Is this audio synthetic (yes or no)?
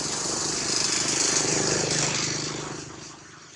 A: no